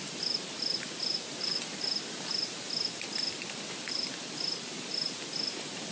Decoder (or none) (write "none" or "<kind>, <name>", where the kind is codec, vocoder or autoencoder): none